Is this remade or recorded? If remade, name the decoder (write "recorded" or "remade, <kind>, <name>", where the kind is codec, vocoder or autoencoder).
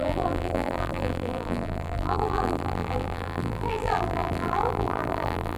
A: remade, vocoder, BigVGAN v2